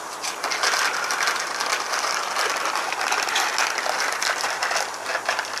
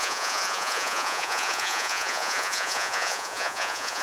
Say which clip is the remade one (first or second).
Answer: second